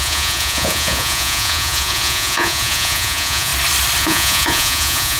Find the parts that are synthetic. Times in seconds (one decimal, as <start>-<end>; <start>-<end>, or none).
0.0-3.5; 4.0-5.2

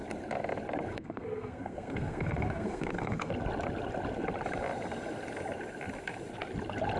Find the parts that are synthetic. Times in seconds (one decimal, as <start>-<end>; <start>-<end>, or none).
0.9-3.3

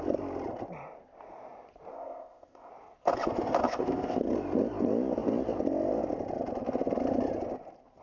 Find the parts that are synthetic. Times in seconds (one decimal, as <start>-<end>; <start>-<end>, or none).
1.9-2.7; 3.6-4.2

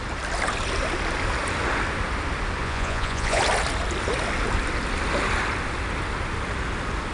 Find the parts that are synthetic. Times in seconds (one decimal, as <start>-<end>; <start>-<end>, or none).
2.6-3.4

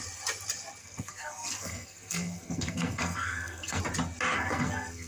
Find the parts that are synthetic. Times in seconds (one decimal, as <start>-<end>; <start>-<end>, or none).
0.8-3.8; 4.3-5.1

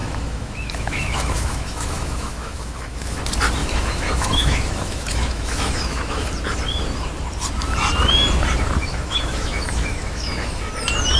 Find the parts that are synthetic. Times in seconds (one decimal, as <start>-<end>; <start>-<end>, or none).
0.0-3.2; 3.6-6.3; 8.8-10.6